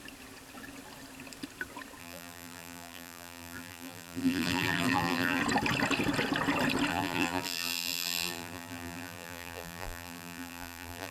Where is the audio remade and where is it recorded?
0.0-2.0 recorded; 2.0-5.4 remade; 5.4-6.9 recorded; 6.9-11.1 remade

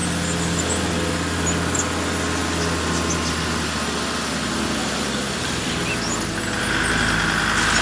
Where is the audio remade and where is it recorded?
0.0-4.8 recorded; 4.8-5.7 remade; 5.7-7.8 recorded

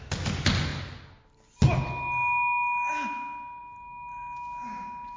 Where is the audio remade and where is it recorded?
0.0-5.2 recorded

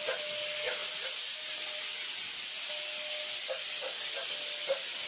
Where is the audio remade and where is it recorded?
0.0-5.1 recorded

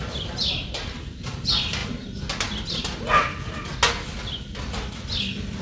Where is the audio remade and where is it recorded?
0.0-1.8 remade; 1.8-5.6 recorded

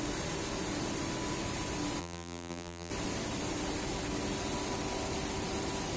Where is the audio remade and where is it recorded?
0.0-2.0 recorded; 2.0-2.9 remade; 2.9-6.0 recorded